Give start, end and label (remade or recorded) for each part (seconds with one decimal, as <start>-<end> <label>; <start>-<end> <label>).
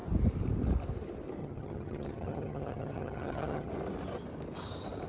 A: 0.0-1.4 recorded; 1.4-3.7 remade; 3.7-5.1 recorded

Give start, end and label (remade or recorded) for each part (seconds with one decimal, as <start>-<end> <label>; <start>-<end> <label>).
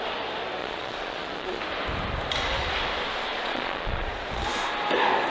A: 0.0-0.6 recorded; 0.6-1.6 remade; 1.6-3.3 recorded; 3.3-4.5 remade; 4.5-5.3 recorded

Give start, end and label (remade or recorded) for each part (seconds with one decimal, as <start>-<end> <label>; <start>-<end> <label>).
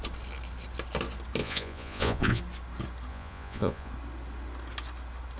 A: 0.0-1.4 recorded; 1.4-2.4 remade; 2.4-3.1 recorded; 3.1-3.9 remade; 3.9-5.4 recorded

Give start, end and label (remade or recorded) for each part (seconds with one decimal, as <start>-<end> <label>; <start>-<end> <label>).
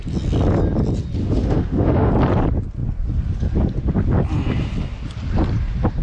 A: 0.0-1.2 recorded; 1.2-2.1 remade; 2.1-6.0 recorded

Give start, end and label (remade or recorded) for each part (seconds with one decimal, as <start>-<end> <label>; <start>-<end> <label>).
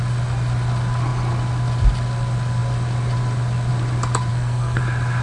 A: 0.0-4.3 recorded; 4.3-4.8 remade; 4.8-5.2 recorded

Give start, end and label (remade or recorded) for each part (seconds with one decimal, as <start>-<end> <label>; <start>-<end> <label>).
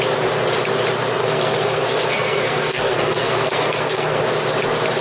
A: 0.0-1.2 recorded; 1.2-4.2 remade; 4.2-5.0 recorded